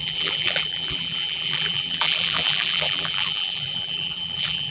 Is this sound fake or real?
fake